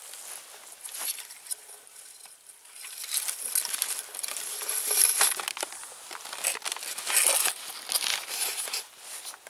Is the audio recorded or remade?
recorded